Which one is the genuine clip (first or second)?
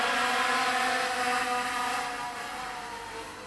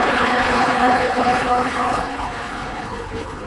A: first